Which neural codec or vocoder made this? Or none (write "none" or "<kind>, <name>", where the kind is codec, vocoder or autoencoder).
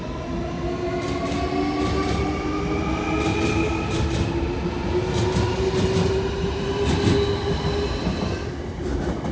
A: none